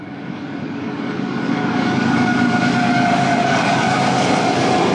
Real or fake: fake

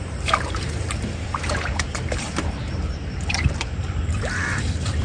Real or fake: fake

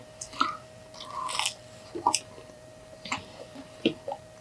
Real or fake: real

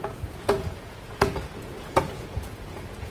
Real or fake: fake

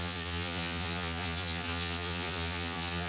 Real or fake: fake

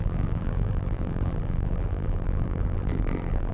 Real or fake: fake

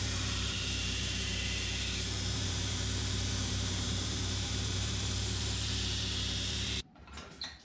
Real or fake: fake